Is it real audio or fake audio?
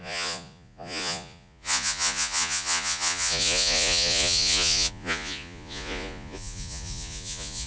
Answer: fake